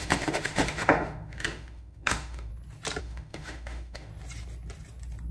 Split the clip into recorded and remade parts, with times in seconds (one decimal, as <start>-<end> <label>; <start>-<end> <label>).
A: 0.0-2.5 remade; 2.5-3.0 recorded; 3.0-4.1 remade; 4.1-5.3 recorded